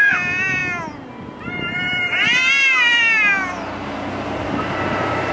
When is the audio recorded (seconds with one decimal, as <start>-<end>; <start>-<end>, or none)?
0.6-1.2; 3.3-4.6